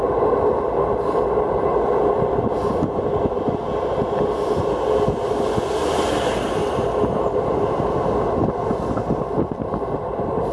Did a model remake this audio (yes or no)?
no